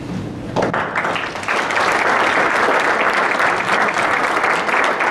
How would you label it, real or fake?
real